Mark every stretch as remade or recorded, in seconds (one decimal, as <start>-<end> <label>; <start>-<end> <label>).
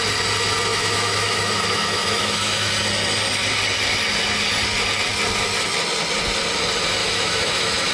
0.0-0.7 recorded; 0.7-2.7 remade; 2.7-7.0 recorded; 7.0-7.9 remade